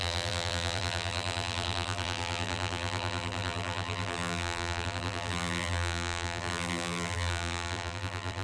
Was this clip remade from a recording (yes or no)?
yes